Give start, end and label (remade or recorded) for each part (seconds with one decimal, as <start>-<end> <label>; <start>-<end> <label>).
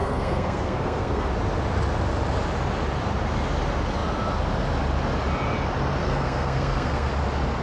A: 0.0-1.3 remade; 1.3-6.0 recorded; 6.0-7.1 remade; 7.1-7.6 recorded